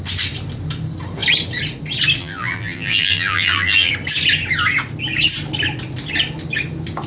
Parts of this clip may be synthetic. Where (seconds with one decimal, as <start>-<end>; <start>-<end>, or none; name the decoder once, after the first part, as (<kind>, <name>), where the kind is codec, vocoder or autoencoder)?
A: 2.2-3.9 (vocoder, BigVGAN v2)